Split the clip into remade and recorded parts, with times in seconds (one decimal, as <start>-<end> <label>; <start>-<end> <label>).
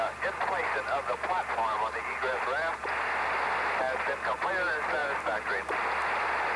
0.0-6.6 recorded